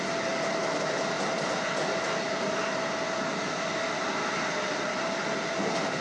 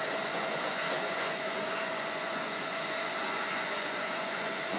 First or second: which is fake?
second